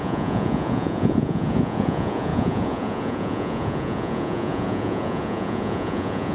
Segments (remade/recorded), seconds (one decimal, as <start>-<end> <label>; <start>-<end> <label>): 0.0-6.3 remade

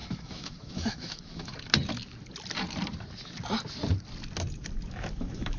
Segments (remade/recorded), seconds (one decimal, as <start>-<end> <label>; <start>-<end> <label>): 0.0-1.5 remade; 1.5-4.9 recorded; 4.9-5.6 remade

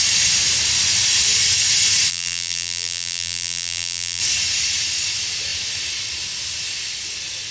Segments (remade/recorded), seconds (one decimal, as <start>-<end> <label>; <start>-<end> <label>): 0.0-2.1 recorded; 2.1-4.2 remade; 4.2-7.5 recorded

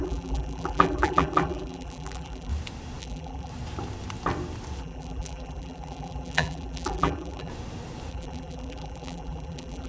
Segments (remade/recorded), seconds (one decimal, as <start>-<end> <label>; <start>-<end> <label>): 0.0-2.5 remade; 2.5-3.0 recorded; 3.0-3.5 remade; 3.5-4.8 recorded; 4.8-7.5 remade; 7.5-8.1 recorded; 8.1-9.9 remade

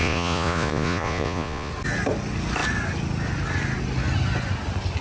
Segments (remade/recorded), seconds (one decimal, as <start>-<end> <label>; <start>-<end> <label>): 0.0-1.7 remade; 1.7-5.0 recorded